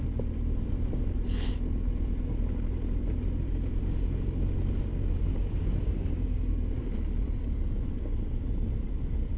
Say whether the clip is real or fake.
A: fake